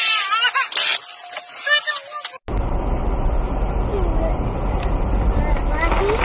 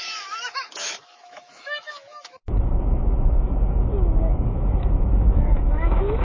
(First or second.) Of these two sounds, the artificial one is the second